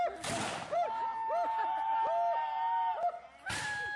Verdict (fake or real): real